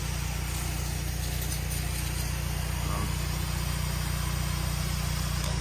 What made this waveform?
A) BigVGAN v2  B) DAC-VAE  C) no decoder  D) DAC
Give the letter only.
C